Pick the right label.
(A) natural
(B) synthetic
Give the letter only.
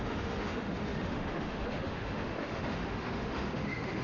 B